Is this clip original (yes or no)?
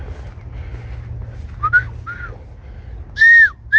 yes